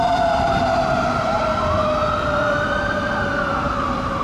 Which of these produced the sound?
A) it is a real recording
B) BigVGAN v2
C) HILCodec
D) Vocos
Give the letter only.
B